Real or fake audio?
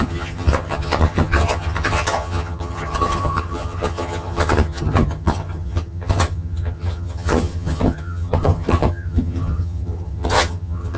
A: fake